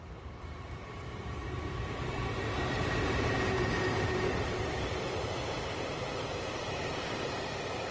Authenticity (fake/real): fake